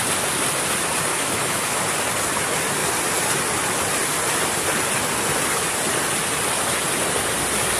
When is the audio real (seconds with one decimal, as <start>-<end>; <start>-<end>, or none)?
0.0-1.1; 1.8-7.8